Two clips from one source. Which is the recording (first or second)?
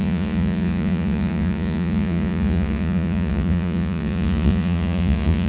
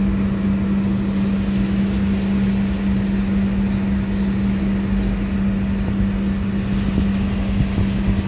second